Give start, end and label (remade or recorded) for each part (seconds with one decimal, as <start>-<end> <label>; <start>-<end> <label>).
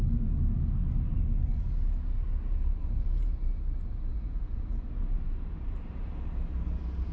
0.0-2.8 recorded; 2.8-3.3 remade; 3.3-4.1 recorded; 4.1-4.9 remade; 4.9-7.1 recorded